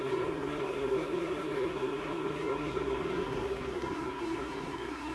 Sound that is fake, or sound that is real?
fake